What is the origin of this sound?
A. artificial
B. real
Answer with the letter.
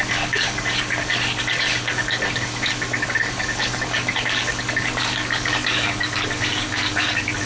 A